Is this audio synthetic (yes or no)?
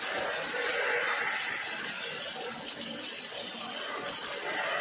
no